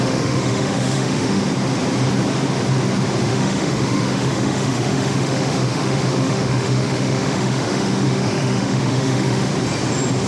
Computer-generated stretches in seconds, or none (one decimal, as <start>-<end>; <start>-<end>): 0.0-1.4; 3.2-9.5